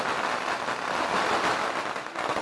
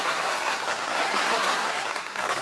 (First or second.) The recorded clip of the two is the first